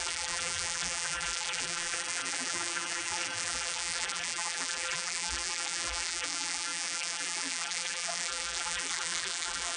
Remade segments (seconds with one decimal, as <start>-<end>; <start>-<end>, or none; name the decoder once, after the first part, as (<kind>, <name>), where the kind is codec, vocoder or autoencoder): 0.0-9.8 (vocoder, BigVGAN v2)